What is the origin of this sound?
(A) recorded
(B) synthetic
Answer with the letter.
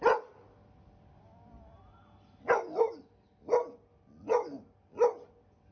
A